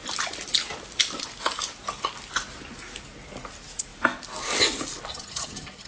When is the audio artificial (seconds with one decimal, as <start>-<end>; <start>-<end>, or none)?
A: 5.1-5.9